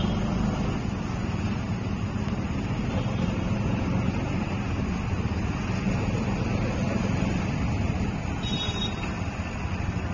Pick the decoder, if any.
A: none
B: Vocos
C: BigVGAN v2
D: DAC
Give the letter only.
A